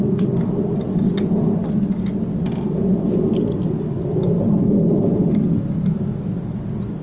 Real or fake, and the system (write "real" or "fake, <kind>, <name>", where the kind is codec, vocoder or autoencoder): real